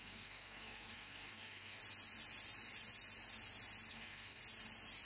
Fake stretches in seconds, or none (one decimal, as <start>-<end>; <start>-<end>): 0.0-1.8; 3.9-4.4